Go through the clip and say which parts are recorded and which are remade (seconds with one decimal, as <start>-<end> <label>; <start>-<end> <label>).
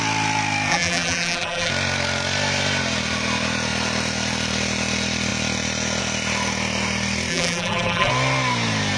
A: 0.0-0.7 recorded; 0.7-1.7 remade; 1.7-7.3 recorded; 7.3-8.1 remade; 8.1-9.0 recorded